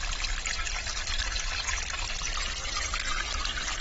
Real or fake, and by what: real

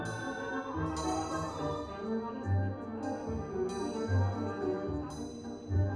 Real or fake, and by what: real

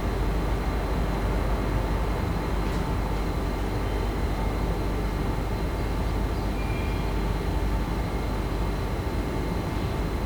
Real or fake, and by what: real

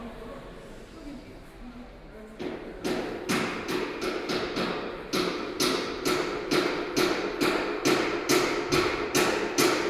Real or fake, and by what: real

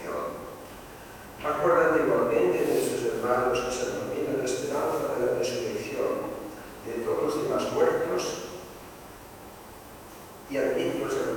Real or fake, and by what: fake, autoencoder, DAC-VAE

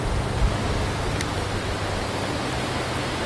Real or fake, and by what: real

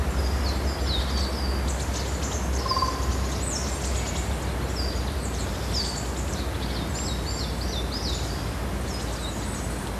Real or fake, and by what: real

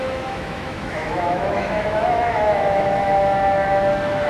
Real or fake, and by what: fake, autoencoder, DAC-VAE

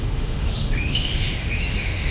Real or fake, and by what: fake, autoencoder, DAC-VAE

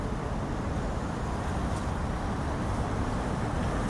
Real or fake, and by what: real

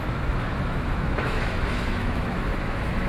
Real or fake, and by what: fake, autoencoder, DAC-VAE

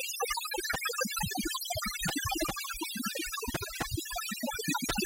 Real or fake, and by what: real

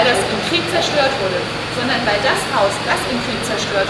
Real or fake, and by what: real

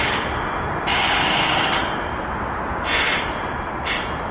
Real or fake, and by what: real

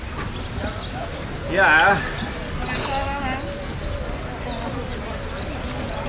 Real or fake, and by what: real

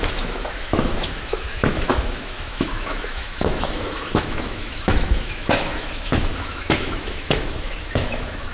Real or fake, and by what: fake, autoencoder, DAC-VAE